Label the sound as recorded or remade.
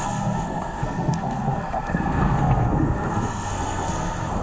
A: remade